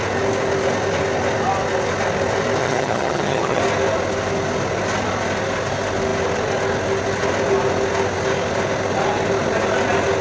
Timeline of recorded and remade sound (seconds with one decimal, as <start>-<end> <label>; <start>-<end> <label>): 0.0-2.6 recorded; 2.6-3.6 remade; 3.6-10.2 recorded